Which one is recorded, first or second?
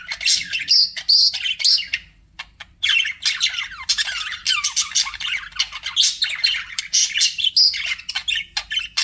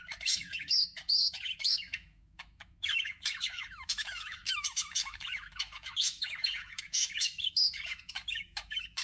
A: first